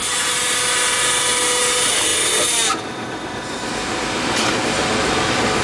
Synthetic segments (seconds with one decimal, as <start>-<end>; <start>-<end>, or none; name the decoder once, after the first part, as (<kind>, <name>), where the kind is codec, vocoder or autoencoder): none